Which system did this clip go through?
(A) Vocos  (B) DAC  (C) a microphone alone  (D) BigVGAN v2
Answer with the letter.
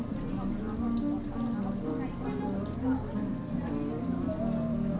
C